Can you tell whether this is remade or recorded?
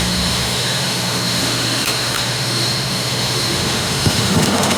remade